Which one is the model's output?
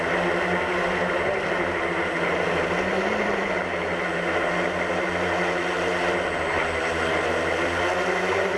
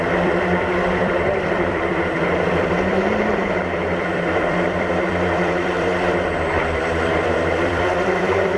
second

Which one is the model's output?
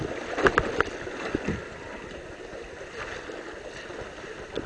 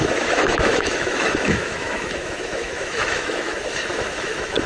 second